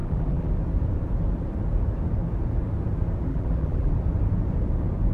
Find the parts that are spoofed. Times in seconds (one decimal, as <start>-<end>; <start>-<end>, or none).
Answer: 0.0-0.5; 3.3-3.9